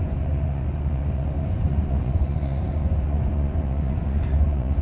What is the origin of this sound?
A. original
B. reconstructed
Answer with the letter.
B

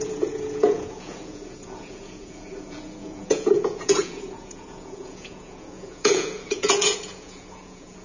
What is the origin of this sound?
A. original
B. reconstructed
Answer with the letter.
B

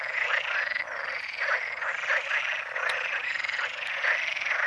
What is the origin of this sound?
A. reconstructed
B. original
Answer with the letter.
B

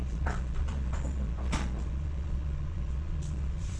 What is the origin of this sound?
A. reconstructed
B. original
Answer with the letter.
A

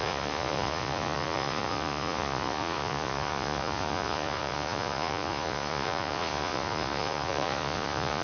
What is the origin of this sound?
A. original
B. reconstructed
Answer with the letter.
B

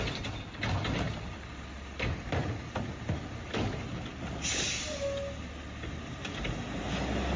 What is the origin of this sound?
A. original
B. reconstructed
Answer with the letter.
A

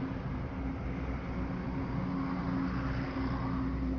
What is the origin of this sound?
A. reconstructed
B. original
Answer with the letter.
B